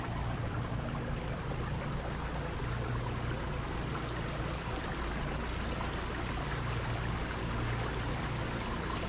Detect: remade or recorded recorded